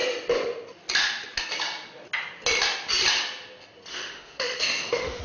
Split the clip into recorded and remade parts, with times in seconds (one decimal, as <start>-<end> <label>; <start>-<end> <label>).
0.0-3.9 recorded; 3.9-5.2 remade